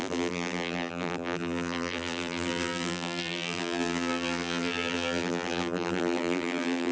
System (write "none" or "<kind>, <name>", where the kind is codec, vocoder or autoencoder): vocoder, BigVGAN v2